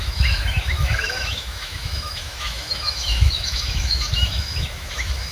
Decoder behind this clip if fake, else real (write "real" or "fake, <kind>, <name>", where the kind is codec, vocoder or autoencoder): fake, autoencoder, DAC-VAE